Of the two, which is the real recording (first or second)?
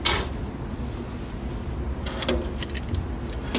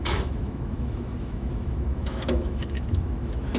first